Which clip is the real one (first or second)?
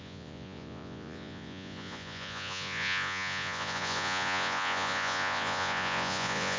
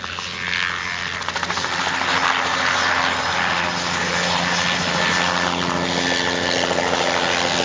second